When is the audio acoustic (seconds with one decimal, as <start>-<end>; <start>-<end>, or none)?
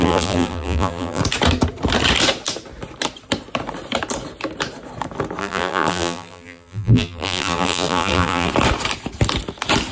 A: 1.2-5.4; 8.5-9.9